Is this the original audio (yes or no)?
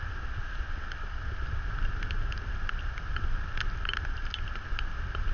yes